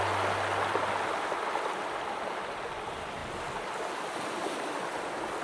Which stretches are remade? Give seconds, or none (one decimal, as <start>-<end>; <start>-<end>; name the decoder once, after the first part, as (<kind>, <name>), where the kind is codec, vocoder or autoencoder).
none